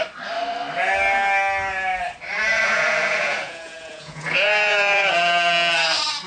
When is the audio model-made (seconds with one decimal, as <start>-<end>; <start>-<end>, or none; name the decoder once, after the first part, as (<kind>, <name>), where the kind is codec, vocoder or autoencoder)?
2.5-5.1 (vocoder, Vocos)